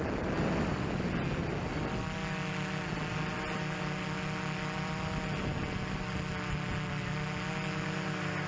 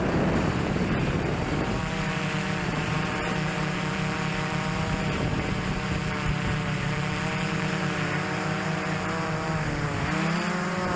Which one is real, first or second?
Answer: first